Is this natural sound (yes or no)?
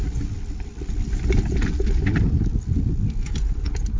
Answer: yes